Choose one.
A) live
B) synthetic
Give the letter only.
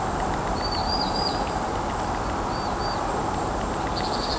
A